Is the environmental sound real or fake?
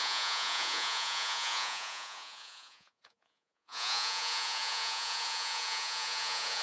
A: fake